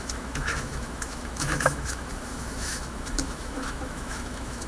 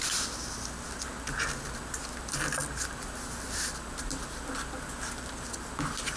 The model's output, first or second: first